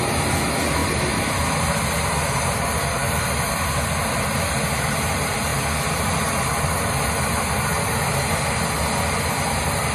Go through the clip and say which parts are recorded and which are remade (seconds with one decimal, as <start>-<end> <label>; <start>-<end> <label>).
0.0-9.9 recorded